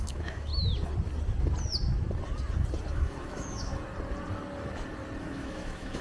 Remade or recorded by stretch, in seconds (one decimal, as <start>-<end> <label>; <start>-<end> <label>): 0.0-0.5 remade; 0.5-2.9 recorded; 2.9-3.7 remade; 3.7-5.2 recorded; 5.2-6.0 remade